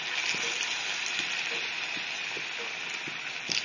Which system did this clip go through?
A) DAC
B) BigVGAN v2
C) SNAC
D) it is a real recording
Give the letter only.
D